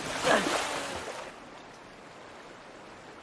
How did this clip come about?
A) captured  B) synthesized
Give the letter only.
A